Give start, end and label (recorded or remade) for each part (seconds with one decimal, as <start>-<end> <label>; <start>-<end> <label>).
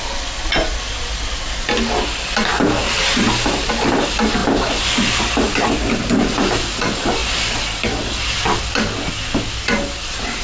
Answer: 0.0-10.4 recorded